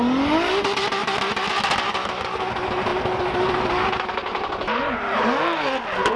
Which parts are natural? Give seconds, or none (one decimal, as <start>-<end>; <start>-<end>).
0.0-6.2